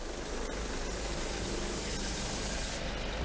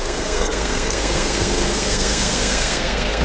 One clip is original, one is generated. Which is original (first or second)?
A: first